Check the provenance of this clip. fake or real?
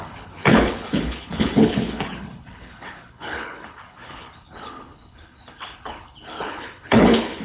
fake